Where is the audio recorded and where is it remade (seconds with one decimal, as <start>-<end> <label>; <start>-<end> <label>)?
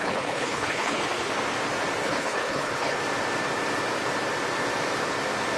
0.0-1.3 remade; 1.3-2.0 recorded; 2.0-3.0 remade; 3.0-5.6 recorded